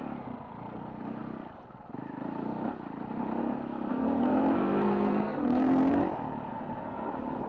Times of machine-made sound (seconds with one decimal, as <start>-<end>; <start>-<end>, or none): 3.9-6.0; 6.5-7.1